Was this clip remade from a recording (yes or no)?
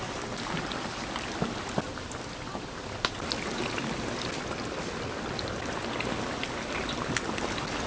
no